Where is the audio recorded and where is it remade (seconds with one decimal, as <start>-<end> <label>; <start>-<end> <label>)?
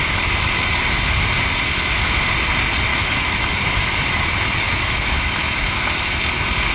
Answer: 0.0-2.9 recorded; 2.9-6.2 remade; 6.2-6.7 recorded